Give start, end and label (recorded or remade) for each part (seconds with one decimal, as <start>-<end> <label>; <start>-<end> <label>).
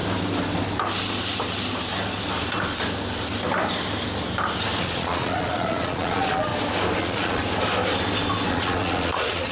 0.0-4.8 recorded; 4.8-6.5 remade; 6.5-7.0 recorded; 7.0-7.4 remade; 7.4-8.5 recorded; 8.5-9.5 remade